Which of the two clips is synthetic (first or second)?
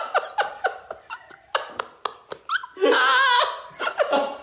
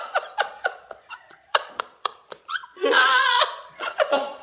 second